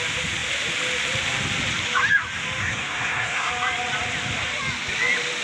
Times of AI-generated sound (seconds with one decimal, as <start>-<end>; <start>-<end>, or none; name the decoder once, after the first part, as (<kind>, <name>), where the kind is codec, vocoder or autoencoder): 2.6-3.5 (codec, SNAC)